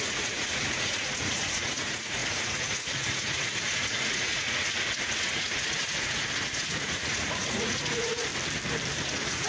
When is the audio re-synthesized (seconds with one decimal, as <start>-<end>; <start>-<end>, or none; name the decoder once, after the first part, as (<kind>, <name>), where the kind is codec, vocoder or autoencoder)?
0.0-8.3 (vocoder, Vocos); 8.9-9.5